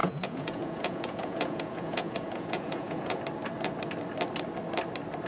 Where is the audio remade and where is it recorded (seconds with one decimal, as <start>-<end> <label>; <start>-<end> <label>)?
0.0-3.2 remade; 3.2-5.3 recorded